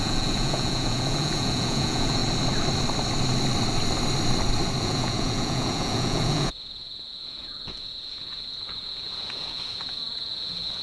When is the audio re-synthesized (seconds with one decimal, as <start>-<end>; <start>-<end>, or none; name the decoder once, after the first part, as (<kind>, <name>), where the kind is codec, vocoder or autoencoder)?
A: 0.0-2.2 (vocoder, Vocos); 4.8-10.8